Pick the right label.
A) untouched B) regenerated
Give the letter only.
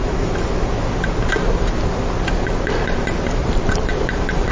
A